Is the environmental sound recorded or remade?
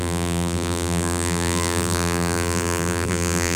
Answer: remade